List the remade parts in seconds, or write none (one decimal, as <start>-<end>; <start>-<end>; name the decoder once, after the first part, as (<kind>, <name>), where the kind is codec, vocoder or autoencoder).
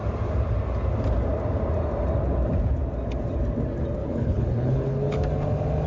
4.0-5.1 (codec, HILCodec)